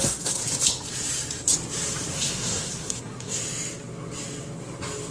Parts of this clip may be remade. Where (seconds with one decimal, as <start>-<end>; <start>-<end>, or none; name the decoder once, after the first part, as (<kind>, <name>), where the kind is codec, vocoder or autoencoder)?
0.0-0.4 (codec, SNAC); 2.1-3.4